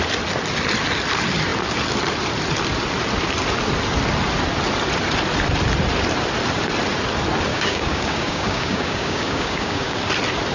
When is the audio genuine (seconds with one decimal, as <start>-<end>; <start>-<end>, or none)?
0.0-7.5; 10.0-10.5